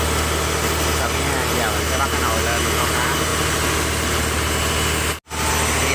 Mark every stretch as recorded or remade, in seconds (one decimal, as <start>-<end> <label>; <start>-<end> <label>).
0.0-5.9 recorded